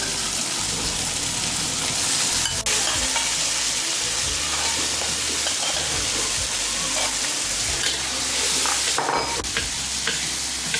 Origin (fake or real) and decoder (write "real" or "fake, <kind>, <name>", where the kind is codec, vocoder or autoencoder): real